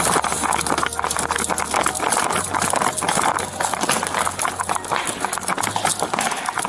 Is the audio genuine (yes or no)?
yes